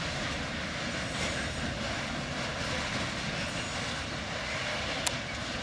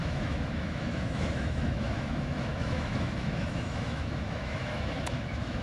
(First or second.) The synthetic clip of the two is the second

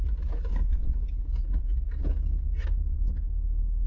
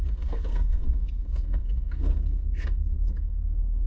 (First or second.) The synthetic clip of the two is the second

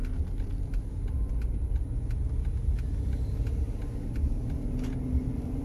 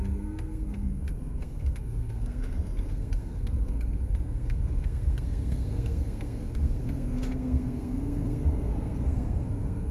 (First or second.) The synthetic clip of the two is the second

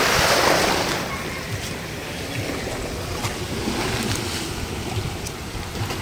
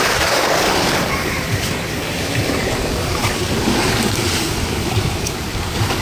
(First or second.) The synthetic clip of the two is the second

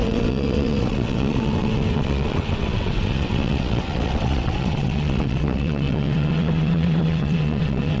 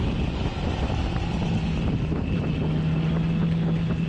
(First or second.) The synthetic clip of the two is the first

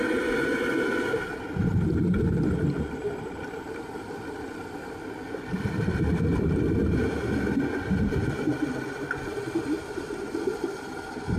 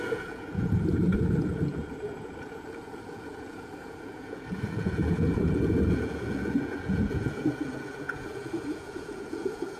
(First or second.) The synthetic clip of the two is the second